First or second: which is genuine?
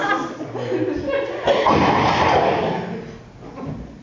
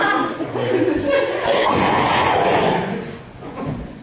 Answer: first